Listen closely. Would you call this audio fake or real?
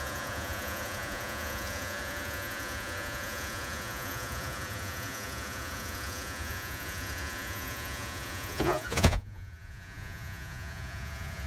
fake